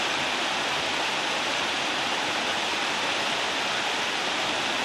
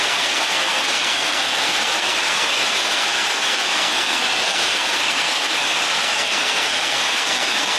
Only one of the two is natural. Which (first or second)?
first